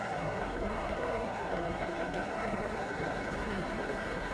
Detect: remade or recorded remade